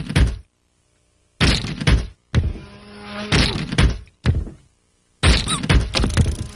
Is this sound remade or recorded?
recorded